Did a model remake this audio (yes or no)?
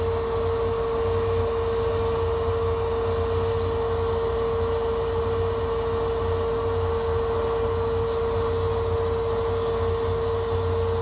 no